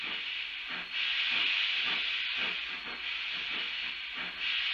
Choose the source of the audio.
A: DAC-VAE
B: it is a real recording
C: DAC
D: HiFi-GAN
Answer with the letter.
B